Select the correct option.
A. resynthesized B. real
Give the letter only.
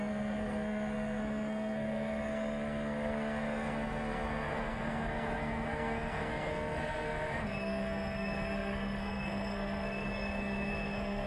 A